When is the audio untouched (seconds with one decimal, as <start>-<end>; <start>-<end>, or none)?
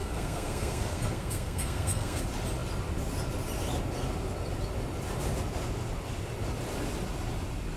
2.2-7.8